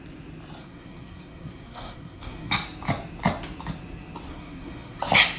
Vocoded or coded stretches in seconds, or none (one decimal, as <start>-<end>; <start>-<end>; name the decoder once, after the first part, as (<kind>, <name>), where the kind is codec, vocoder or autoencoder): 0.6-2.5 (codec, SNAC); 4.3-5.0